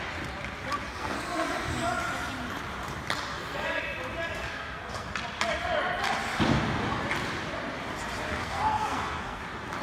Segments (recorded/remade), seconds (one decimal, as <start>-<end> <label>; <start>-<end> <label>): 0.0-0.9 recorded; 0.9-1.5 remade; 1.5-3.3 recorded; 3.3-3.8 remade; 3.8-4.3 recorded; 4.3-5.1 remade; 5.1-8.3 recorded; 8.3-9.4 remade; 9.4-9.8 recorded